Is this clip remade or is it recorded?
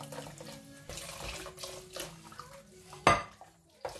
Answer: recorded